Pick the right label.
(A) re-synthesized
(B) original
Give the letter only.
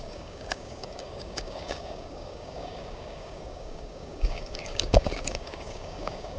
A